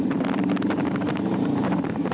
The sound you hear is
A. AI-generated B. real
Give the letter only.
A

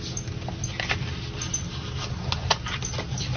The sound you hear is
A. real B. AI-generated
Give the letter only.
A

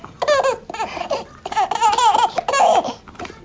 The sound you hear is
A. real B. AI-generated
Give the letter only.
A